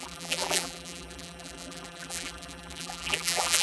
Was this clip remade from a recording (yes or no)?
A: yes